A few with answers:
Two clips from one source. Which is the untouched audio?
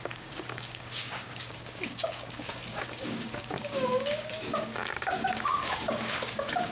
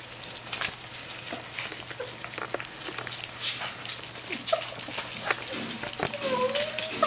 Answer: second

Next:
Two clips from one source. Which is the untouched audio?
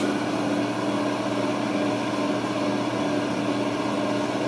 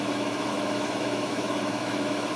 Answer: first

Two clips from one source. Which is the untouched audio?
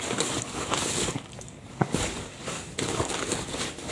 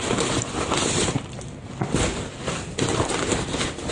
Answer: second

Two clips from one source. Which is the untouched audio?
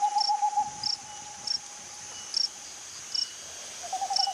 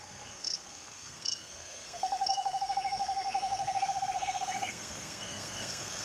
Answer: first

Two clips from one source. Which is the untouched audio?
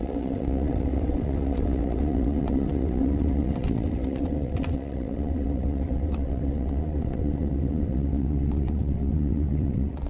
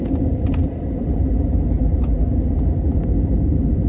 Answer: second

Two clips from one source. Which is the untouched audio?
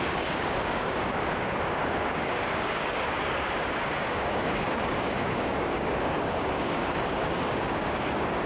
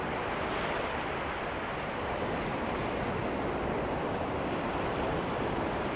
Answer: second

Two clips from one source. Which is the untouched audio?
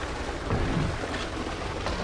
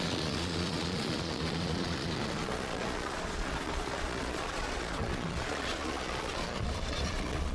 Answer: first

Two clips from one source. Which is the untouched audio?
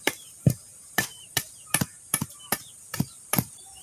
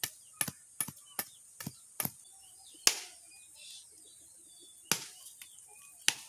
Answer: second